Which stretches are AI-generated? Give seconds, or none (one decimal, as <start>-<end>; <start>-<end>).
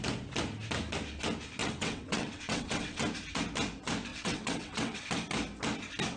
1.6-3.0; 4.1-5.0